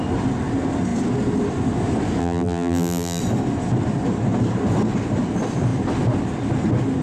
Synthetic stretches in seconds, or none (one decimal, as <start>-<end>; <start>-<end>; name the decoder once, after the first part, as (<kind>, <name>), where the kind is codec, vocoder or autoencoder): 2.2-3.2 (vocoder, BigVGAN v2)